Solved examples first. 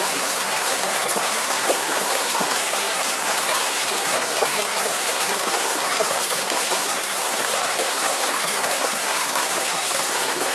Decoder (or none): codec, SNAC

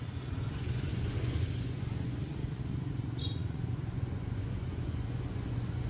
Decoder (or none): vocoder, Vocos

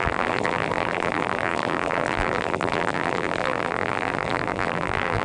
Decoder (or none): vocoder, BigVGAN v2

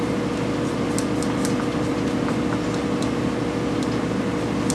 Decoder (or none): none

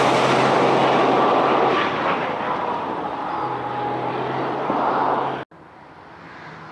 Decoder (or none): none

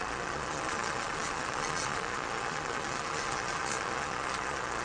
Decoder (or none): vocoder, Vocos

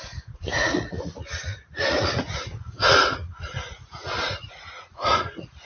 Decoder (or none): vocoder, Vocos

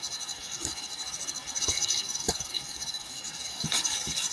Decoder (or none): codec, DAC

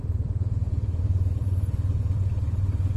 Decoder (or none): vocoder, BigVGAN v2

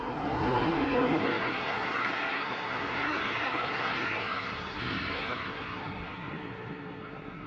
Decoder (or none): codec, SNAC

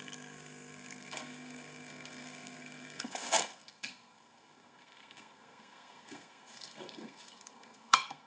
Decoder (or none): codec, SNAC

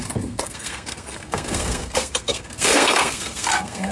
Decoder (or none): codec, SNAC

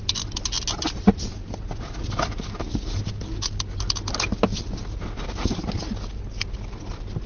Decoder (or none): none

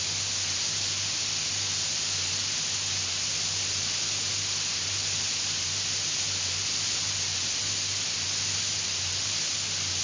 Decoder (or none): none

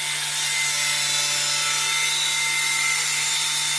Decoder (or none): none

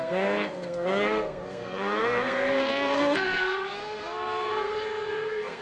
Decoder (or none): codec, SNAC